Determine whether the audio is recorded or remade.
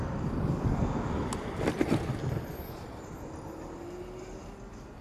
recorded